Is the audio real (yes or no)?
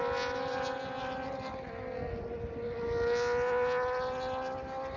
yes